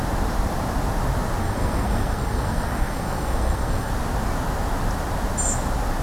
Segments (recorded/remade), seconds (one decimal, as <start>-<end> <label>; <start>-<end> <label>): 0.0-1.4 recorded; 1.4-3.9 remade; 3.9-6.0 recorded